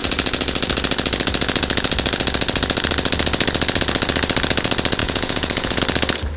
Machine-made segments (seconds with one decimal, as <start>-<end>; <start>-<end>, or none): 5.0-5.8